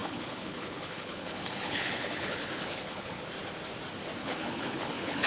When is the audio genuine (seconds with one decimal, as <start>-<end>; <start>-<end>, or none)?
3.2-4.2